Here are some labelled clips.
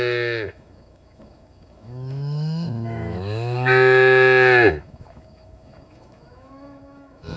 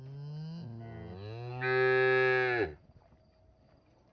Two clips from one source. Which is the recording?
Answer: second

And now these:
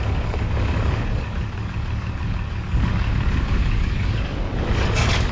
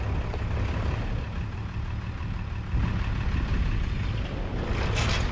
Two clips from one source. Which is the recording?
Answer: second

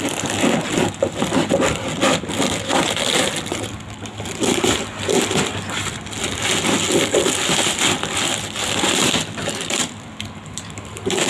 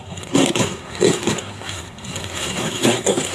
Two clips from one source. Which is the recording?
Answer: first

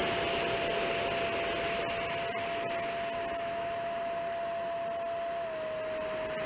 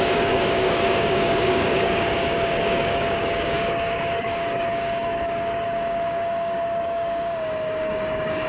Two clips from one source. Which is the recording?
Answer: first